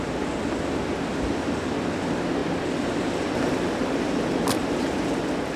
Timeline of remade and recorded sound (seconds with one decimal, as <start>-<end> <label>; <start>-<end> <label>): 0.0-5.6 recorded